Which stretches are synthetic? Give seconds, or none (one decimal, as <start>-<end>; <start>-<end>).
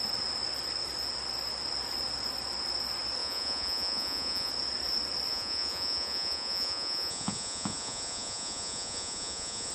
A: 3.2-4.5; 5.3-9.7